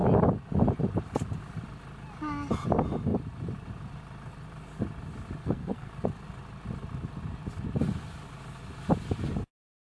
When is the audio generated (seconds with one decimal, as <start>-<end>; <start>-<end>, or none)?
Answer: 5.4-5.9